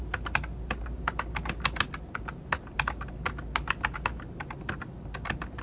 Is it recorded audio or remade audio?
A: recorded